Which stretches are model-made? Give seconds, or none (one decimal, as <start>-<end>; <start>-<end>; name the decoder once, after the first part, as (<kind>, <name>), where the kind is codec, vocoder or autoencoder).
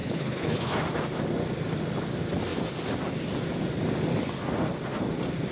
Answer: 0.0-0.8 (codec, HILCodec)